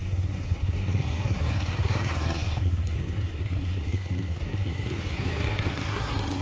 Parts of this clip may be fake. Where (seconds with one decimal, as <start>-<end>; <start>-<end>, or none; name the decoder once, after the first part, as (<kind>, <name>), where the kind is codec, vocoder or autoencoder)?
0.0-6.4 (codec, SNAC)